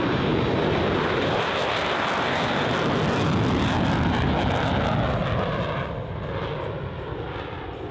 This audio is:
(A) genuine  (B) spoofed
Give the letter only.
A